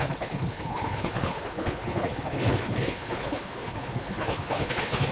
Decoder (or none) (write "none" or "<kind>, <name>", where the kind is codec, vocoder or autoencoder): codec, HILCodec